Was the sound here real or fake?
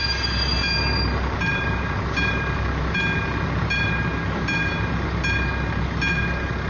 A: real